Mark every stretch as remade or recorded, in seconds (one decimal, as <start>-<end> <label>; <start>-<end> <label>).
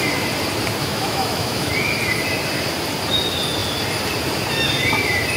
0.0-0.8 recorded; 0.8-1.7 remade; 1.7-5.4 recorded